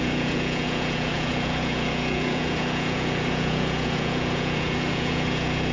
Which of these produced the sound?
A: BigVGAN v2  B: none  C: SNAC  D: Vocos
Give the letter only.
D